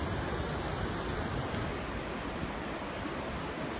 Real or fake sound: real